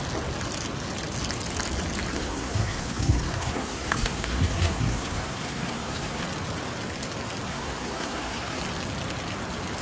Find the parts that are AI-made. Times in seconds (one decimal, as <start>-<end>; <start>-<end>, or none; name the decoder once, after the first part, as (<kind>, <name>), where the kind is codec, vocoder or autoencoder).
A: 2.1-6.2 (codec, SNAC); 7.5-8.6